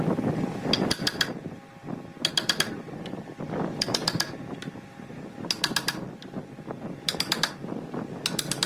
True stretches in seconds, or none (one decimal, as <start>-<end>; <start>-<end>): 0.0-8.7